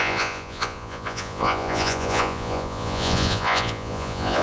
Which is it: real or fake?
fake